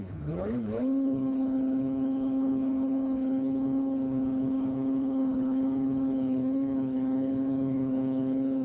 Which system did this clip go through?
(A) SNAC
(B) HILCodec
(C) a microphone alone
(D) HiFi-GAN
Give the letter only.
B